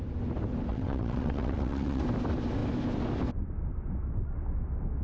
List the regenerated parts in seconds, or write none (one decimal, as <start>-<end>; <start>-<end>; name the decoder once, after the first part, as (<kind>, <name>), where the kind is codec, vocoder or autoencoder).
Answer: 0.7-2.0 (vocoder, WaveNeXt)

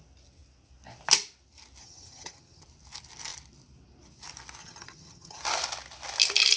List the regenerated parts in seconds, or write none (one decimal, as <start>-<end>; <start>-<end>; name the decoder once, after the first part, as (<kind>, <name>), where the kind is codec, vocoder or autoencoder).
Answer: 1.8-2.6 (vocoder, HiFi-GAN); 4.6-5.4

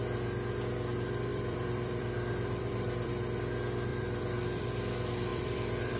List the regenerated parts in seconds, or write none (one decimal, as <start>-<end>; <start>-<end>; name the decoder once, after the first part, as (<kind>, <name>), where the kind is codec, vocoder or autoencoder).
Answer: 1.3-3.1 (vocoder, BigVGAN v2); 3.9-4.6; 5.3-6.0

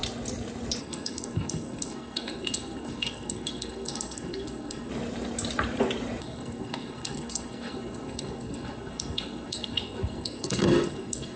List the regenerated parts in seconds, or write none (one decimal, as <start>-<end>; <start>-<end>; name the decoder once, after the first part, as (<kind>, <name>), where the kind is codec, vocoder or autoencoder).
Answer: 0.8-4.9 (codec, SNAC); 6.2-11.4